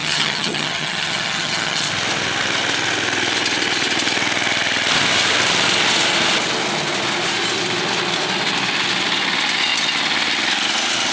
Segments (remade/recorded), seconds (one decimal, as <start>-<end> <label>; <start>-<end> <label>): 0.0-1.9 remade; 1.9-11.1 recorded